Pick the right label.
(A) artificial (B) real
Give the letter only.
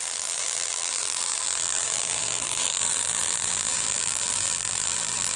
A